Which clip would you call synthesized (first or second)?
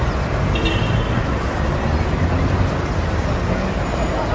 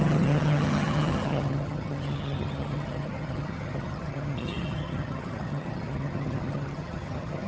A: second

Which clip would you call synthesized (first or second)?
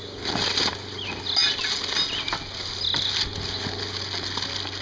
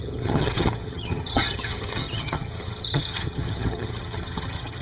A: second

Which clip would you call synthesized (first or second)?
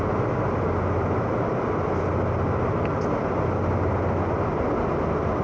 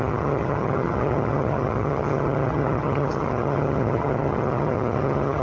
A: second